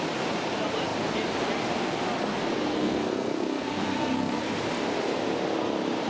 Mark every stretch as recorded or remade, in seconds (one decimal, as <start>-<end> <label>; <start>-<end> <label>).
0.0-2.7 recorded; 2.7-4.4 remade; 4.4-6.1 recorded